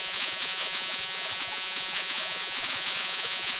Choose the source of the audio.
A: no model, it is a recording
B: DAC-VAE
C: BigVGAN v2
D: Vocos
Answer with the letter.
D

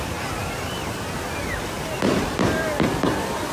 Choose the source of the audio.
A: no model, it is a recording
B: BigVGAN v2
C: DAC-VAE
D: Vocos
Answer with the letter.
B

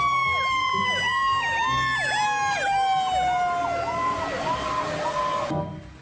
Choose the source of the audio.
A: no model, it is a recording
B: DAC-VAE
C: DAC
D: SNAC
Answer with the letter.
A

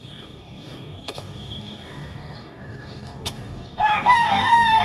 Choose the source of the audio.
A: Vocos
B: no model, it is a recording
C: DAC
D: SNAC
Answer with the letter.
C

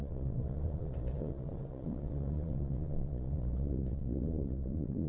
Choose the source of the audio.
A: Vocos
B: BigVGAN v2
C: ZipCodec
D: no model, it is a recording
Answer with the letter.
A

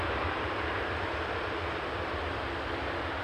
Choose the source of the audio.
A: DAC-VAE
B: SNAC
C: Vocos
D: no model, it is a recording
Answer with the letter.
D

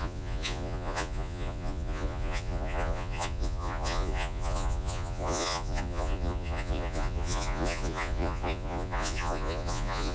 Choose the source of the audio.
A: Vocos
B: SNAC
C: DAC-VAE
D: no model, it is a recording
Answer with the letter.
A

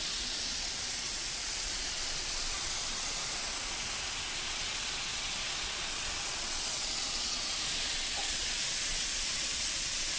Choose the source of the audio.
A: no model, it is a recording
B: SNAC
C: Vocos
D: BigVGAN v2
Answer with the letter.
C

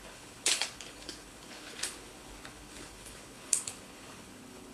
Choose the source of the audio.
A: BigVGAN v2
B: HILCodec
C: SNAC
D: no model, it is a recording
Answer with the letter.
B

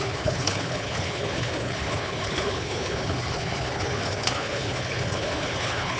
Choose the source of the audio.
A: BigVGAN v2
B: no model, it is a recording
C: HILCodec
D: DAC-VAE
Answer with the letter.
C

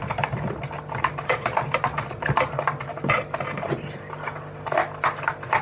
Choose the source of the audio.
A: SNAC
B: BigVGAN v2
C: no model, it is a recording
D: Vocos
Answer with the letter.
C